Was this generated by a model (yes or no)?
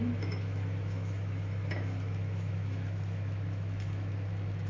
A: yes